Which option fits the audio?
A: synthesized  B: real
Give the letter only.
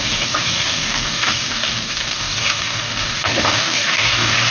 A